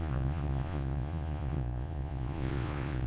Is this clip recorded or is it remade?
remade